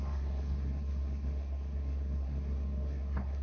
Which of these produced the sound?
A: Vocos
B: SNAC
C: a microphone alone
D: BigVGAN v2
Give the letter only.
B